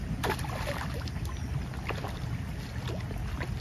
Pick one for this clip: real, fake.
real